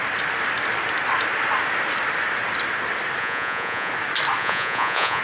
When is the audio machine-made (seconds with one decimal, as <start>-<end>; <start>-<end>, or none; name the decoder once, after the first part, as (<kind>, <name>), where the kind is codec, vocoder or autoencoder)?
3.2-3.9 (vocoder, Vocos); 4.4-5.2

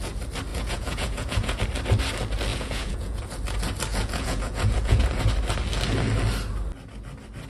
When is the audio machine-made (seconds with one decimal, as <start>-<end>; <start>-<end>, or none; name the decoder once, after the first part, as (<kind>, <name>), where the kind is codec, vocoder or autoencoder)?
0.5-1.6 (vocoder, Vocos); 2.5-3.2; 3.9-5.2